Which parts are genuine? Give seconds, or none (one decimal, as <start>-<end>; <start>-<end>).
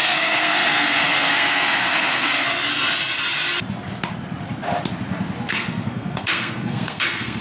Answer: 2.7-5.5